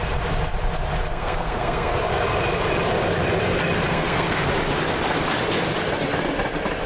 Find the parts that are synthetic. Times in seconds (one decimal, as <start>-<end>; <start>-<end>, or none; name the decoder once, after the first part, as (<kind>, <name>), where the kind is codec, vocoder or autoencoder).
1.1-2.0 (codec, SNAC); 3.9-4.5